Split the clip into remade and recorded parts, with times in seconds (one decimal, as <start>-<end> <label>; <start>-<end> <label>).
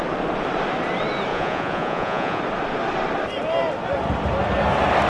0.0-1.3 recorded; 1.3-2.4 remade; 2.4-5.1 recorded